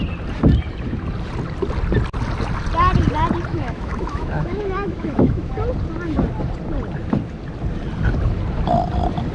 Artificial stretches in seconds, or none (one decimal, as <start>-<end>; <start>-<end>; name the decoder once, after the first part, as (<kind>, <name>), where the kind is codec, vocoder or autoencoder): 3.5-5.5 (autoencoder, DAC-VAE)